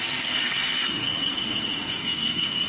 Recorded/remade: remade